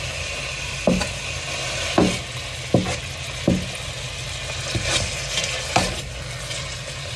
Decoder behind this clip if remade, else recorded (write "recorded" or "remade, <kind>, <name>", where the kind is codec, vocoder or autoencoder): recorded